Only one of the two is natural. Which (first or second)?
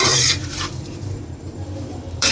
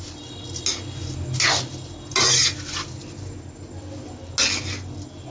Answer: second